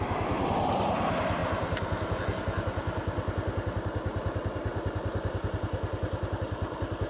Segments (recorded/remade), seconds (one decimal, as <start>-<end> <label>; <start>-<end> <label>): 0.0-7.1 recorded